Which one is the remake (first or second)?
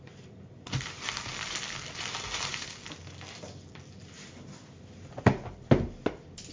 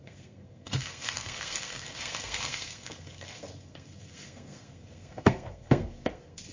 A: second